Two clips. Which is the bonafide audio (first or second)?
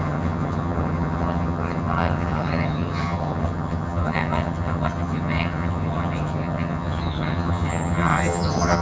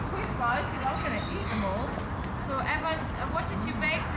second